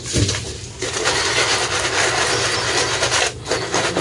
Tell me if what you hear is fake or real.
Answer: real